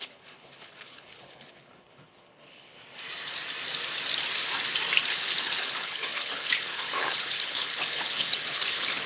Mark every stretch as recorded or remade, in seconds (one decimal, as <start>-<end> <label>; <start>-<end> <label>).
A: 0.0-2.8 remade; 2.8-5.1 recorded; 5.1-9.1 remade